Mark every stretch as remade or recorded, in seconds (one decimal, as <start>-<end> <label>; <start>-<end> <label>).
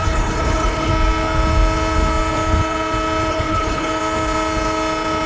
0.0-0.9 remade; 0.9-3.3 recorded; 3.3-3.9 remade; 3.9-5.3 recorded